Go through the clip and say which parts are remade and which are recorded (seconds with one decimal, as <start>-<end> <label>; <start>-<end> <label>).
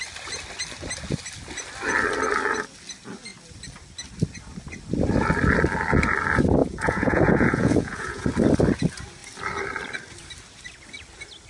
0.0-6.6 recorded; 6.6-8.3 remade; 8.3-11.5 recorded